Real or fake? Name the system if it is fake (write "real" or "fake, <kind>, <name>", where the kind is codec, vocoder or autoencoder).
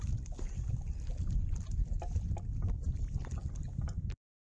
real